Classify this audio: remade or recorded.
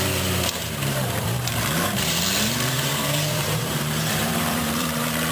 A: remade